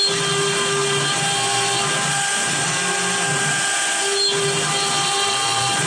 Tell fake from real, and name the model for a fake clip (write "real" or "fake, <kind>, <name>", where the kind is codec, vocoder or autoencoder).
real